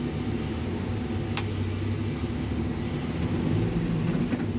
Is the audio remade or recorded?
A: recorded